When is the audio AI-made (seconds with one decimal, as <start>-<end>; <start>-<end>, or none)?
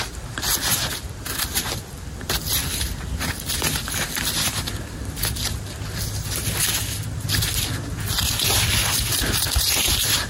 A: 2.6-5.1